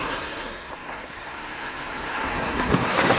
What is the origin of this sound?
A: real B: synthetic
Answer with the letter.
B